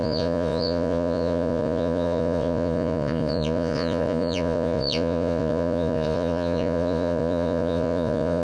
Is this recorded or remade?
remade